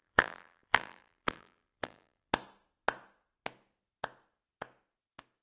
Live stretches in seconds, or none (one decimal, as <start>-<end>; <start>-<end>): 2.3-5.4